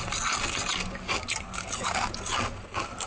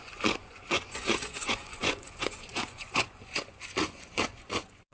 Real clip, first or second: first